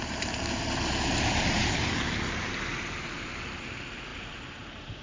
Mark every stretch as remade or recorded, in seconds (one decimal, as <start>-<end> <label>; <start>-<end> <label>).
0.0-1.6 remade; 1.6-2.4 recorded; 2.4-5.0 remade